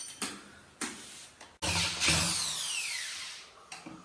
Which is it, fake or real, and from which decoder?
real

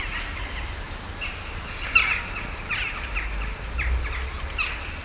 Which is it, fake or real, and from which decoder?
real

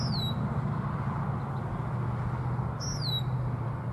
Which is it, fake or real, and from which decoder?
real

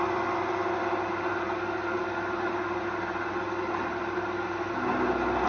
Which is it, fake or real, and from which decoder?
real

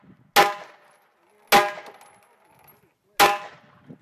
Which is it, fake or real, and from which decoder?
real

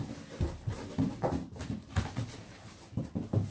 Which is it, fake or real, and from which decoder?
real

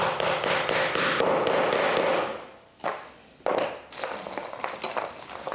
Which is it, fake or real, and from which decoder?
real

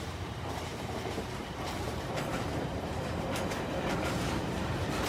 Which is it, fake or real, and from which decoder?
fake, vocoder, BigVGAN v2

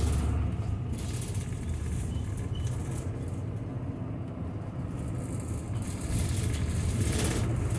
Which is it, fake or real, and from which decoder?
real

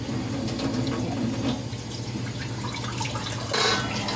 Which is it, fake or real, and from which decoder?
real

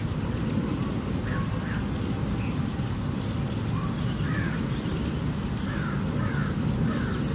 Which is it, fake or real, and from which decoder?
real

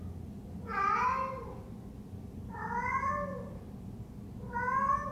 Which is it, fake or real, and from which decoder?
real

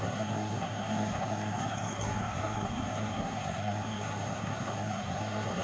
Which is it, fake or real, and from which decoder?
fake, codec, SNAC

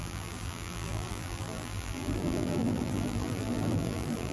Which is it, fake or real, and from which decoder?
fake, vocoder, BigVGAN v2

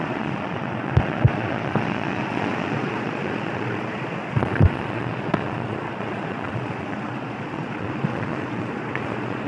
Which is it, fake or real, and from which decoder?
fake, vocoder, Vocos